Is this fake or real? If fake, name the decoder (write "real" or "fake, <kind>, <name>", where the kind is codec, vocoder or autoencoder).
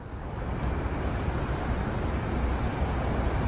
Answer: real